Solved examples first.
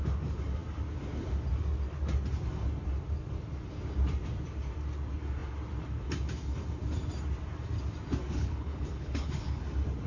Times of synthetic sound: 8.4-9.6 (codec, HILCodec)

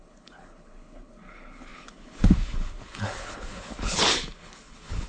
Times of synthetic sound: 0.0-5.1 (codec, HILCodec)